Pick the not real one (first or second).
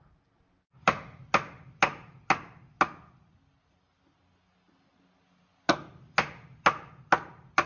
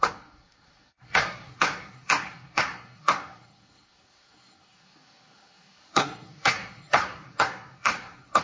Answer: second